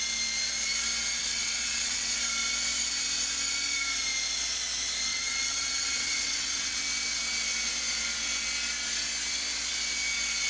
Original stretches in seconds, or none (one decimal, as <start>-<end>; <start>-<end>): 0.0-1.2; 2.2-5.1; 6.8-10.5